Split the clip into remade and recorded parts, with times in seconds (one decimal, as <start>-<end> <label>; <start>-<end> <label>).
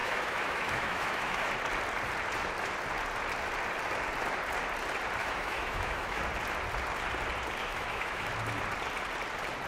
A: 0.0-1.5 remade; 1.5-5.2 recorded; 5.2-6.2 remade; 6.2-7.6 recorded; 7.6-8.3 remade; 8.3-9.7 recorded